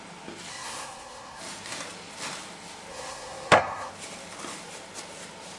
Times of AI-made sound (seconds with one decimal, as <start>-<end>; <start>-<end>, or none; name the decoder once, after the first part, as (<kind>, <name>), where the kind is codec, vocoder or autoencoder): 0.5-1.4 (codec, SNAC); 2.9-3.9